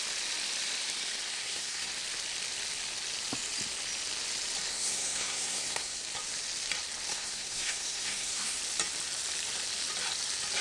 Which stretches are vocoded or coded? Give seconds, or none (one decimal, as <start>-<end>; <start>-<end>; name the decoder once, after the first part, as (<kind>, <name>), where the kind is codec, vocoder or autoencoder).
1.3-1.9 (codec, SNAC); 4.7-6.0; 7.1-8.6